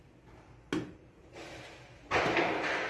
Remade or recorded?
recorded